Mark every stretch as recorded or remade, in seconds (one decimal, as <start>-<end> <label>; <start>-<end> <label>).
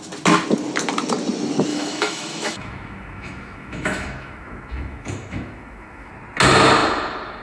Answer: 0.0-1.7 recorded; 1.7-6.1 remade; 6.1-7.4 recorded